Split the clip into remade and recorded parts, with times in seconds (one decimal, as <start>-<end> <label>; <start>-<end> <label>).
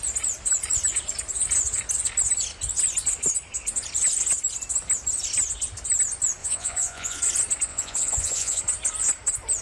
0.0-6.4 recorded; 6.4-7.2 remade; 7.2-7.7 recorded; 7.7-8.6 remade; 8.6-9.6 recorded